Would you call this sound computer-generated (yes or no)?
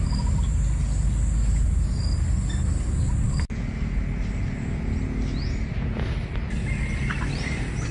no